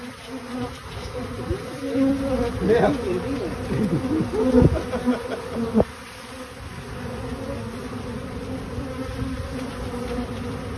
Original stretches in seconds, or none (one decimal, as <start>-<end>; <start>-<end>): 0.0-10.8